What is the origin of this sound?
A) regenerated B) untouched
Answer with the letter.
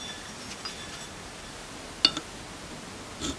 B